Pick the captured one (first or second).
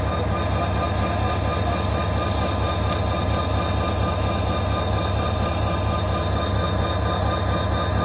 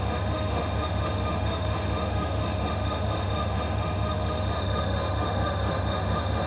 first